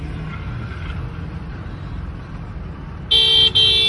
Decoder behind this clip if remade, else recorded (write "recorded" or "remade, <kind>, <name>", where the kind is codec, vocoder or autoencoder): recorded